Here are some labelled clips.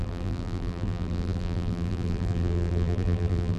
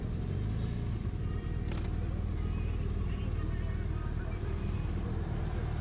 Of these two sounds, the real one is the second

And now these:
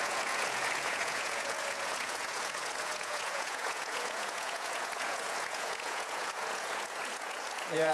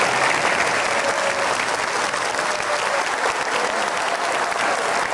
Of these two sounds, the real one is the second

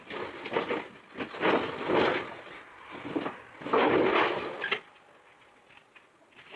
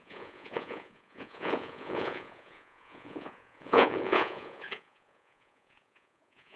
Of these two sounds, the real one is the first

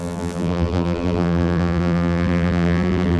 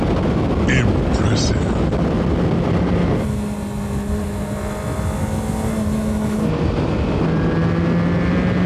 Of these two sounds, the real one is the second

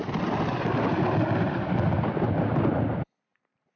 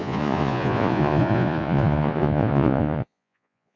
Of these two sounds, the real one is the first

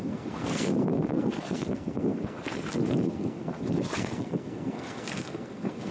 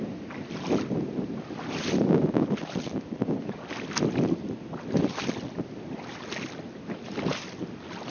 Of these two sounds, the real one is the second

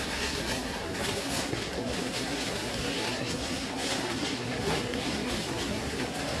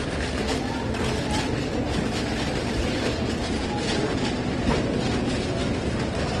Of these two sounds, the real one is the second